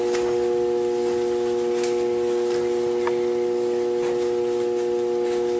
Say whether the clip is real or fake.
real